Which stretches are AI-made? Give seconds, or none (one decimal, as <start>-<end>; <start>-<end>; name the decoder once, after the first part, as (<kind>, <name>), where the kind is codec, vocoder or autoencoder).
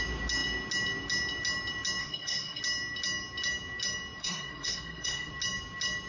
2.0-2.6 (codec, SNAC); 4.2-5.3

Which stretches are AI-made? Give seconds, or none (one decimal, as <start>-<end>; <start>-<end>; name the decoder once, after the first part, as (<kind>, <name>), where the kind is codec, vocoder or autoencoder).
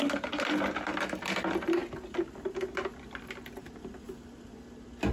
none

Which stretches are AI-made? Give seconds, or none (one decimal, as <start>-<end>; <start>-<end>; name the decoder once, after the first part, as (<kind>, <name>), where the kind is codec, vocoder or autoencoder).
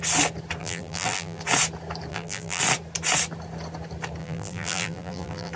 0.6-1.4 (vocoder, BigVGAN v2); 2.1-2.6; 4.2-5.5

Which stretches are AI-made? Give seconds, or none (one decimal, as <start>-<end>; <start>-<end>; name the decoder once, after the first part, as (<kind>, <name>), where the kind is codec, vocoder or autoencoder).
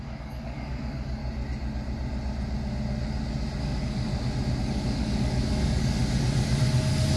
0.0-1.2 (codec, DAC); 3.6-4.1; 4.6-6.0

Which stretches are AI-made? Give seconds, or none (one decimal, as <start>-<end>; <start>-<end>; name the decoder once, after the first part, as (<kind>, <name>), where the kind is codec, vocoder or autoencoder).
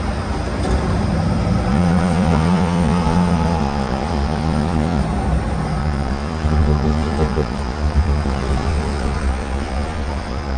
1.7-5.0 (vocoder, Vocos); 5.8-10.6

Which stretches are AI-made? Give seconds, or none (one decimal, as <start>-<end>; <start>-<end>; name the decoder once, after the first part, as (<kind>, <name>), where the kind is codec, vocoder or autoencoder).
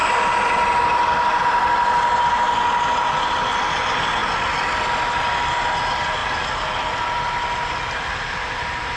none